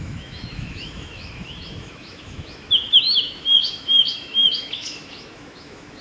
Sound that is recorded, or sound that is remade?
remade